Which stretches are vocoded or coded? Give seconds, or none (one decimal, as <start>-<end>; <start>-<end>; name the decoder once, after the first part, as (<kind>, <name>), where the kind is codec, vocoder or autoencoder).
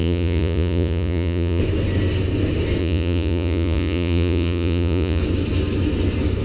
0.0-1.6 (vocoder, Vocos); 2.8-5.2